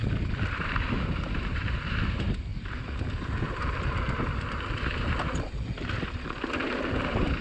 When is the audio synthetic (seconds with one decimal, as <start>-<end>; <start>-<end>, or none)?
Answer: 0.0-2.5; 6.9-7.4

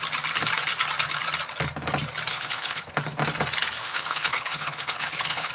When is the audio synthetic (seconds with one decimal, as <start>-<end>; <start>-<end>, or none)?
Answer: 2.3-2.9; 3.8-5.5